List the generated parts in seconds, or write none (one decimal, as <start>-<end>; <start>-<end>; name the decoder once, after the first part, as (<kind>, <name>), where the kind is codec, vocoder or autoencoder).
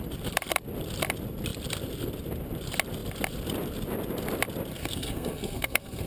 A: 4.7-6.1 (codec, SNAC)